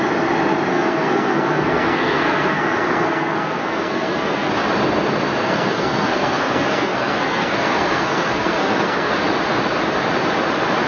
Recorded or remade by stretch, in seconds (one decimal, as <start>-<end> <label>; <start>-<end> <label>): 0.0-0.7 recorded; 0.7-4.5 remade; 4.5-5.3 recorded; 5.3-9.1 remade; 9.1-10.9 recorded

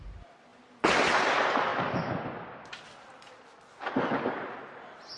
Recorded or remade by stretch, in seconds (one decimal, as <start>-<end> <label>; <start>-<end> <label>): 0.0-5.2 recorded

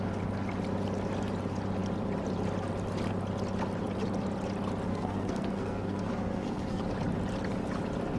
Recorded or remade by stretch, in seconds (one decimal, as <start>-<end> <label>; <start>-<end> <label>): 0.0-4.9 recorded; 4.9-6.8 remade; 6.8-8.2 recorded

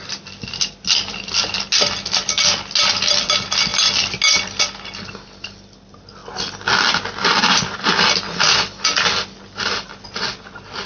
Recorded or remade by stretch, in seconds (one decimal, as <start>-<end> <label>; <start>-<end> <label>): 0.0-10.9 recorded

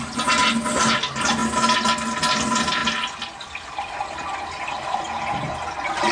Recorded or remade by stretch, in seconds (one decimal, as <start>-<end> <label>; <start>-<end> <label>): 0.0-6.1 recorded

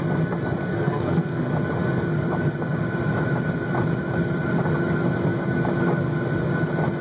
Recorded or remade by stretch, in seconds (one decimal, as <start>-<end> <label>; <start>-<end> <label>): 0.0-0.7 recorded; 0.7-1.5 remade; 1.5-7.0 recorded

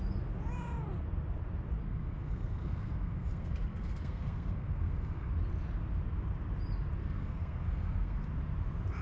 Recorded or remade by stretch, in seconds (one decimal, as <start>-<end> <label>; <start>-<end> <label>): 0.0-1.8 recorded; 1.8-5.3 remade; 5.3-7.0 recorded; 7.0-8.2 remade; 8.2-9.0 recorded